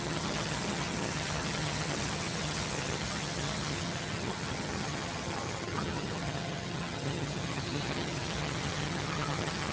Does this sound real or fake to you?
fake